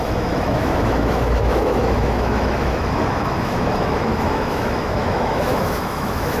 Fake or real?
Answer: fake